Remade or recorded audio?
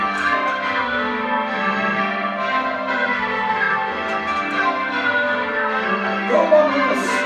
remade